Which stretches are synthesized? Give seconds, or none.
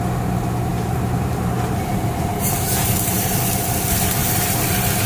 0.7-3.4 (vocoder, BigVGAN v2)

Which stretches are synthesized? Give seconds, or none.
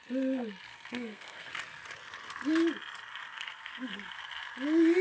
0.7-1.5 (codec, SNAC); 3.1-4.2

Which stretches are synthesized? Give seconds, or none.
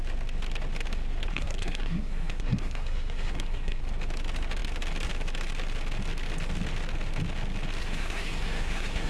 1.3-3.8 (codec, SNAC); 7.8-9.1